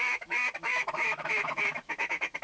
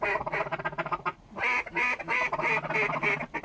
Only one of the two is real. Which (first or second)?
second